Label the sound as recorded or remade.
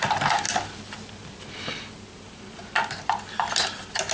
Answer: recorded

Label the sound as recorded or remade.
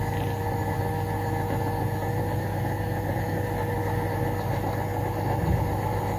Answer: recorded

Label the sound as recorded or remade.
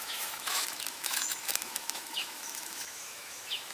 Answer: remade